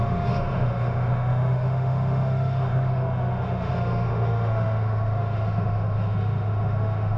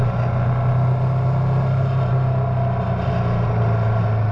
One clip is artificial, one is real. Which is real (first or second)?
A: second